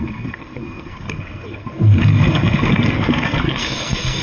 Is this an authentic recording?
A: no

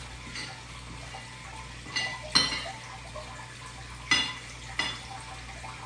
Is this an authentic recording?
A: yes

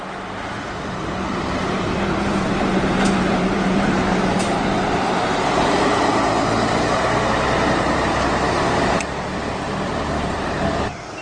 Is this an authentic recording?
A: no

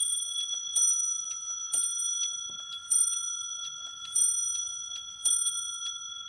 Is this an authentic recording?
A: no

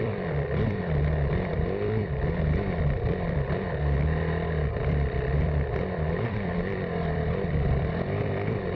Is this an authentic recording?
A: no